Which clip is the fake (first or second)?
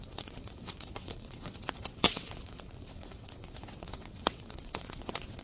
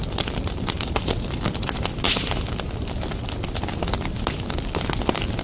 first